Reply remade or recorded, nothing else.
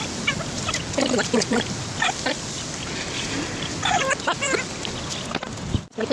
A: recorded